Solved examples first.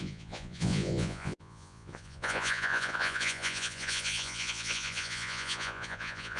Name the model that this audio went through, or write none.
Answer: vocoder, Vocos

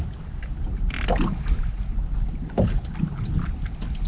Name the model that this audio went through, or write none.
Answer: none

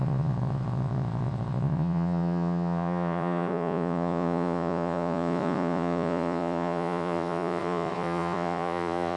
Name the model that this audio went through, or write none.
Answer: vocoder, Vocos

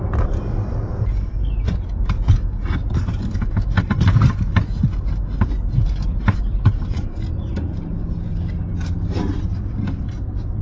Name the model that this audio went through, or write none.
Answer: none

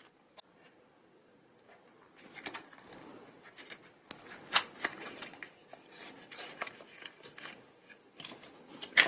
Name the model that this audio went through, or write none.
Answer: none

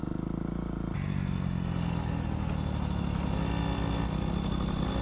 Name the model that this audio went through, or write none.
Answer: none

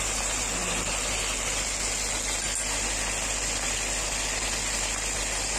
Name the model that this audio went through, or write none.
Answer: none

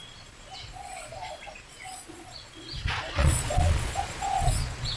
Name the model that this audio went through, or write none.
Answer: vocoder, Vocos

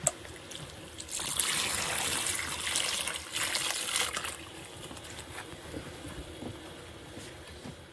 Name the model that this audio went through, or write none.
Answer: none